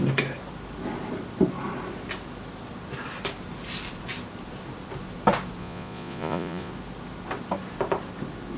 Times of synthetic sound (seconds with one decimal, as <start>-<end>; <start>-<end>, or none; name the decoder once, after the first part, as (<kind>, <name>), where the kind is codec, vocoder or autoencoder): 5.6-6.7 (vocoder, Vocos)